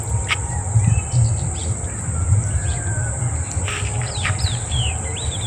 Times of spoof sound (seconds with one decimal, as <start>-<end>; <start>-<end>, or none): 0.0-5.5